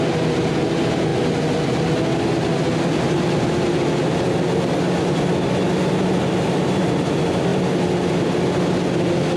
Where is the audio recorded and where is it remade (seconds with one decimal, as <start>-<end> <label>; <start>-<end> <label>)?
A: 0.0-9.4 recorded